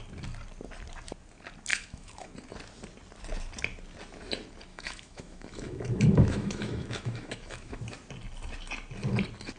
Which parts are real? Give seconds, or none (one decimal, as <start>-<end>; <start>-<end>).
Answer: 0.0-1.7; 2.3-4.7; 7.8-9.6